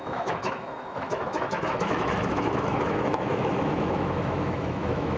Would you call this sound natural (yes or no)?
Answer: no